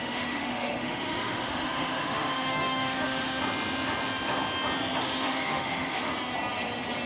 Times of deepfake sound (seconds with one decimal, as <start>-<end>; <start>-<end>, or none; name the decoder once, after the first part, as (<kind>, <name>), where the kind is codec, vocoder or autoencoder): 0.0-3.4 (autoencoder, DAC-VAE); 5.0-6.1